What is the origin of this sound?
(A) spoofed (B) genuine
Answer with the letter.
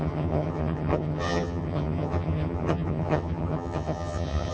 A